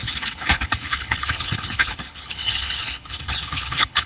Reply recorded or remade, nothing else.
remade